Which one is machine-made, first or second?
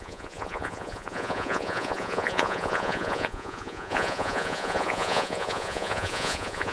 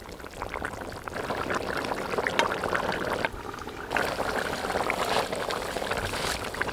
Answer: first